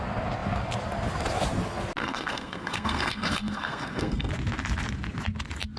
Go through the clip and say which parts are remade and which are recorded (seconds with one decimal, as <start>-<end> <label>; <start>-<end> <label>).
0.0-2.0 recorded; 2.0-4.3 remade; 4.3-5.8 recorded